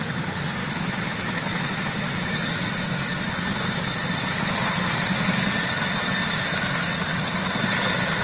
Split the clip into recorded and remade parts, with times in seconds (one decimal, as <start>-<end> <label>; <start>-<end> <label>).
0.0-0.6 recorded; 0.6-2.5 remade; 2.5-8.2 recorded